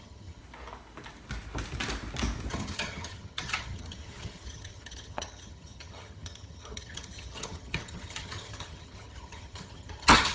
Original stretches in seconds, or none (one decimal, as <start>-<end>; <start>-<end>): 0.4-2.5